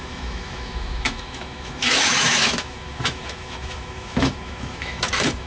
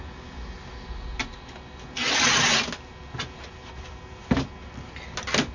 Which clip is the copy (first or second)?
first